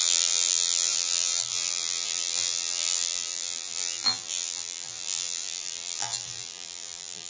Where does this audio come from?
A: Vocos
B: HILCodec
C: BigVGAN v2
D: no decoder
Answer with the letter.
C